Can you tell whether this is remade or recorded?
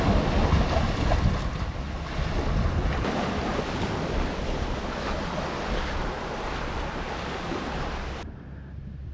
recorded